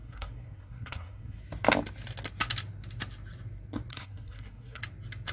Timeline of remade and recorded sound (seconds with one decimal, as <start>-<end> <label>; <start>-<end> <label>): 0.0-1.4 remade; 1.4-3.9 recorded; 3.9-4.8 remade; 4.8-5.3 recorded